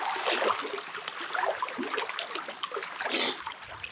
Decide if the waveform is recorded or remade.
recorded